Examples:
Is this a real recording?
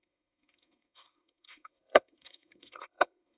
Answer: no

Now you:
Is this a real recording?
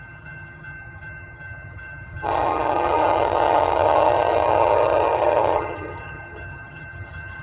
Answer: no